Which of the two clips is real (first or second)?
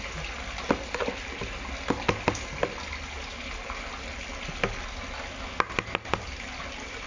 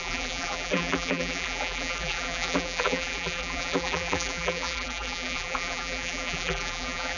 first